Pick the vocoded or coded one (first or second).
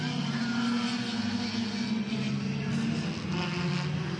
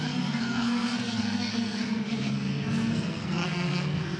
second